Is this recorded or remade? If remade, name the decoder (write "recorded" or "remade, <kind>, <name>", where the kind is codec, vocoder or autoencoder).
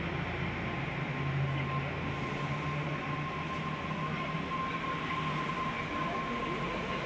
recorded